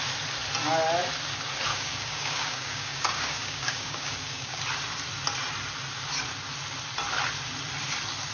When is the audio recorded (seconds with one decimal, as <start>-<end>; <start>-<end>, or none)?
0.0-1.7; 4.6-8.3